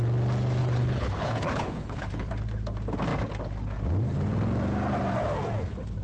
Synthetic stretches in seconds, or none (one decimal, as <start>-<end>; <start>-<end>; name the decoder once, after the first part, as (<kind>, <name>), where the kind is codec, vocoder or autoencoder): 0.6-2.3 (codec, HILCodec)